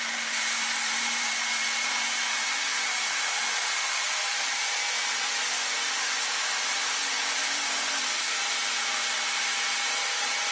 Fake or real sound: fake